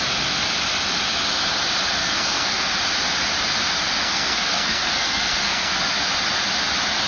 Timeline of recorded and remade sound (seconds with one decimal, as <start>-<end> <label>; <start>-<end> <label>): 0.0-2.0 recorded; 2.0-2.7 remade; 2.7-4.0 recorded; 4.0-5.8 remade; 5.8-7.1 recorded